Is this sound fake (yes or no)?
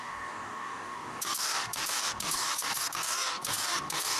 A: yes